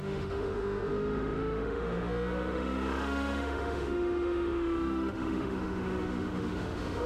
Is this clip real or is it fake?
fake